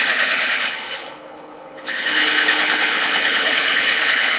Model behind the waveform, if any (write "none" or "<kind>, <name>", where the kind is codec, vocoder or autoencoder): codec, HILCodec